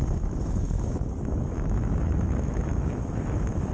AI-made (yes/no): yes